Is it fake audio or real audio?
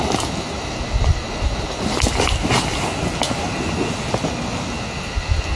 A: real